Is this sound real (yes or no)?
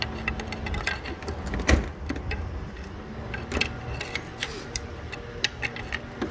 yes